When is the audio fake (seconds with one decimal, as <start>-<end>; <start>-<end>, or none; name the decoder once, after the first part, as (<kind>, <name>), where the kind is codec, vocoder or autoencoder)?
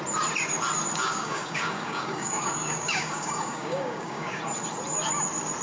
1.0-4.4 (codec, DAC)